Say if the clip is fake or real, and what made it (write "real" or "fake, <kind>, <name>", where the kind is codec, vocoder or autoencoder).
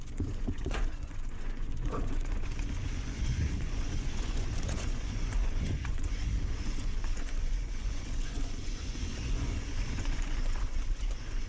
fake, vocoder, Vocos